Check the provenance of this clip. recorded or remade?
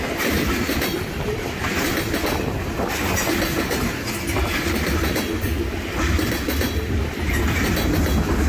recorded